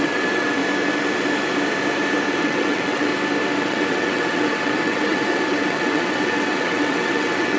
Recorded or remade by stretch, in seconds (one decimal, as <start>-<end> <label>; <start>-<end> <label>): 0.0-0.6 remade; 0.6-2.4 recorded; 2.4-3.1 remade; 3.1-3.6 recorded; 3.6-7.6 remade